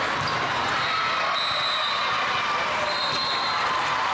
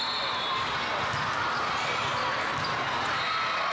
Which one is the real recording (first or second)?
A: second